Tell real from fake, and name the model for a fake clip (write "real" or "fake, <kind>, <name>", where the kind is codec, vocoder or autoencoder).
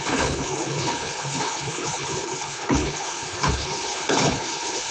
fake, codec, HILCodec